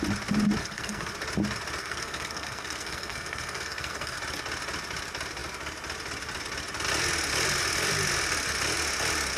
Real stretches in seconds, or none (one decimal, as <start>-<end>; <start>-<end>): 0.0-0.6; 1.1-1.8; 4.2-9.4